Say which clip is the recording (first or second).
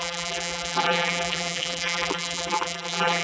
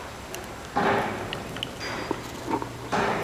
second